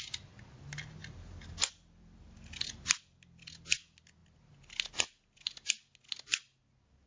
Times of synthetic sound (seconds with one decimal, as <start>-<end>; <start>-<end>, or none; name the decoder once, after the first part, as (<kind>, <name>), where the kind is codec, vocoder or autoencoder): 1.0-3.5 (vocoder, BigVGAN v2)

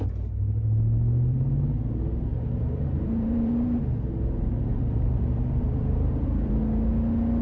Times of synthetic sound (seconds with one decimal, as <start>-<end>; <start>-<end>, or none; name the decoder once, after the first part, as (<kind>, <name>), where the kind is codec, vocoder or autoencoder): 2.3-3.8 (vocoder, BigVGAN v2); 4.7-6.5

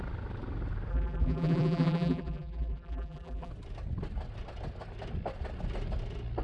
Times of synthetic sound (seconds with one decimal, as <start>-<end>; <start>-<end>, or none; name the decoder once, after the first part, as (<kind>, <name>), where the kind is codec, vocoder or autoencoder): 0.9-3.5 (vocoder, BigVGAN v2)

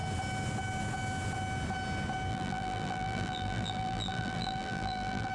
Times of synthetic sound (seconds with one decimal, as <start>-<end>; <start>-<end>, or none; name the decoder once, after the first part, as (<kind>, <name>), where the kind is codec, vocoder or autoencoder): 2.3-5.3 (vocoder, BigVGAN v2)

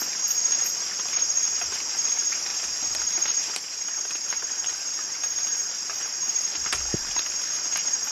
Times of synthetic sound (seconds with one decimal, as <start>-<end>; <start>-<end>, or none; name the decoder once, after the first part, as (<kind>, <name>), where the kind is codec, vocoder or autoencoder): 2.5-6.5 (vocoder, BigVGAN v2); 6.9-7.5

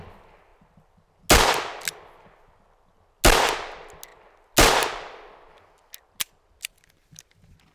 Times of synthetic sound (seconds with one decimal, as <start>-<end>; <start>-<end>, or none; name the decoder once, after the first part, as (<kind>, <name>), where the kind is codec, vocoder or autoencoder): none